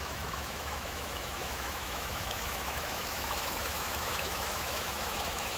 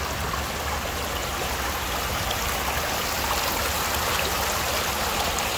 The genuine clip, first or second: second